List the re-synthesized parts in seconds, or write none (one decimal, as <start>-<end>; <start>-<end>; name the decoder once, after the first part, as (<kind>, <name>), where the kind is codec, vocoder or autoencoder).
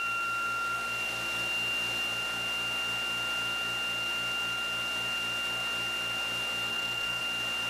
6.7-7.2 (codec, SNAC)